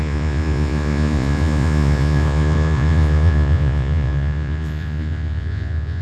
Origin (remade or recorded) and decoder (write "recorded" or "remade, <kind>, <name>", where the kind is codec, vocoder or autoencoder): remade, vocoder, Vocos